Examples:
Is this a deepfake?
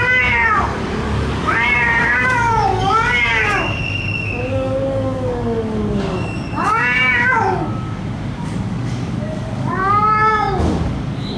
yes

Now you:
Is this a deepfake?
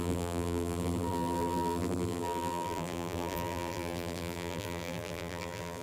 yes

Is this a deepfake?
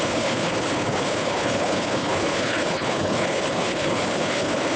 yes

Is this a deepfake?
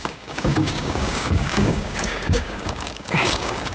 yes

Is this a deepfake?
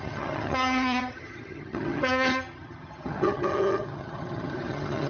yes